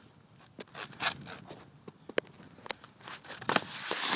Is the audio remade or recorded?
recorded